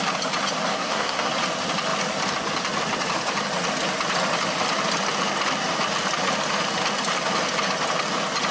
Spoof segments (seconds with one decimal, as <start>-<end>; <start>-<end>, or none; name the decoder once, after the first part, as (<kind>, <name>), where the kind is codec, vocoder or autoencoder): 0.7-1.3 (codec, SNAC)